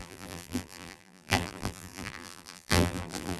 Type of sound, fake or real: fake